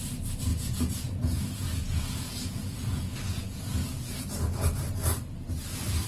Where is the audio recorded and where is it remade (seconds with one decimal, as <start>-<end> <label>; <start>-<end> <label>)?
0.0-0.5 recorded; 0.5-4.2 remade; 4.2-6.1 recorded